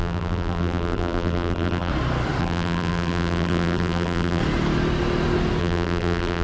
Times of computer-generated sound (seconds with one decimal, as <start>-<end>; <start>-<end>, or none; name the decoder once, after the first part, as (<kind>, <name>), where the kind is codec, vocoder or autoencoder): 0.0-1.9 (vocoder, BigVGAN v2); 2.4-4.4; 5.6-6.4